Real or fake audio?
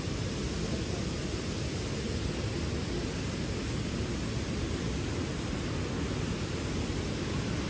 real